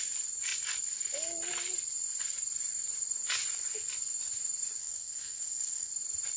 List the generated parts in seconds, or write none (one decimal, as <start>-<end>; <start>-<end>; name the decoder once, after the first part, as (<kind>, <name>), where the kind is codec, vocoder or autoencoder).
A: 4.8-5.9 (codec, SNAC)